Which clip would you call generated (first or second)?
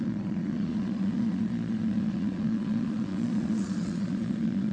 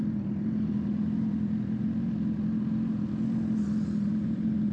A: first